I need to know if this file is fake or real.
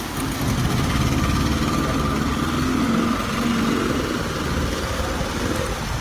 real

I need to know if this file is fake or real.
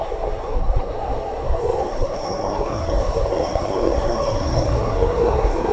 fake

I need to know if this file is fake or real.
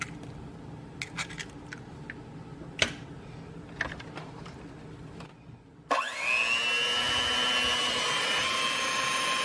real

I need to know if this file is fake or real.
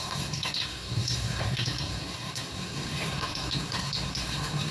fake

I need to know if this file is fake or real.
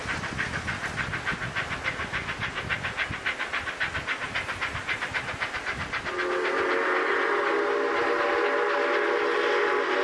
real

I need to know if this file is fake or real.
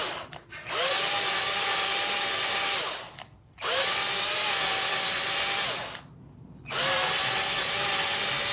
real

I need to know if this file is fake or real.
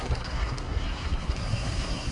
fake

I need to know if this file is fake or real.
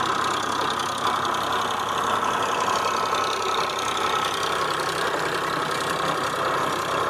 real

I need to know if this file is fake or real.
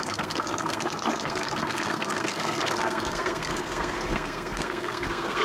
fake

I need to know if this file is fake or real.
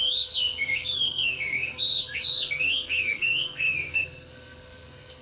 fake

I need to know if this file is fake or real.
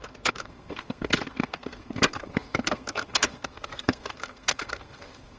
fake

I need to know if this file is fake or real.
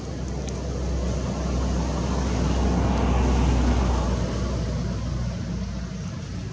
real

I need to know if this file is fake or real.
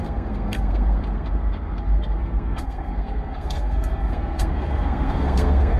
fake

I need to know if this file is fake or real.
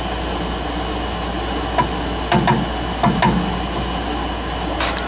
real